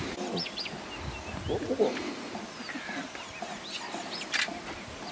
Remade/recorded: recorded